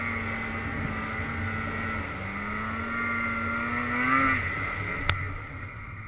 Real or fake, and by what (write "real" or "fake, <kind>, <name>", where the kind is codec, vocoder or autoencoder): real